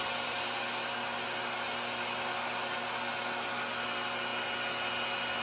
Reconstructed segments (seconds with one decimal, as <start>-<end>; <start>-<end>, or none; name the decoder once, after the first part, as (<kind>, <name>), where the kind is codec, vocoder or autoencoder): none